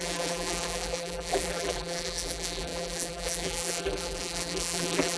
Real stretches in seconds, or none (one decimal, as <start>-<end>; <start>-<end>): none